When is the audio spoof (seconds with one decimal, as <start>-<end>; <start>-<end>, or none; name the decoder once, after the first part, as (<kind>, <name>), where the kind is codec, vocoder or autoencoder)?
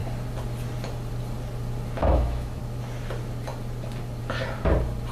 2.0-2.6 (autoencoder, DAC-VAE)